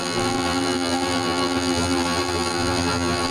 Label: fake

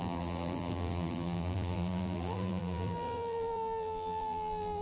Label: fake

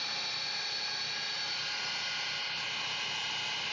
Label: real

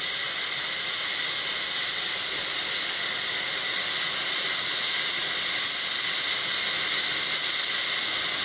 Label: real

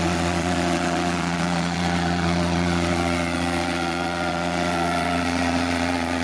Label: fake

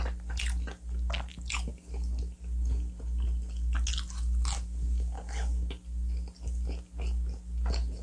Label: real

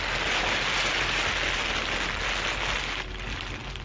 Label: real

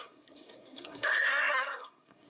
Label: fake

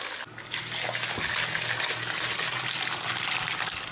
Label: real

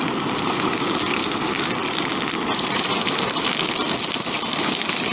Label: real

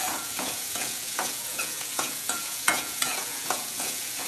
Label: fake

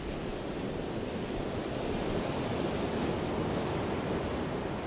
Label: real